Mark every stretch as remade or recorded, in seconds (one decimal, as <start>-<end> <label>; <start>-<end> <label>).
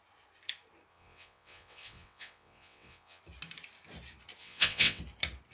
0.0-0.9 recorded; 0.9-3.2 remade; 3.2-4.4 recorded; 4.4-5.0 remade; 5.0-5.5 recorded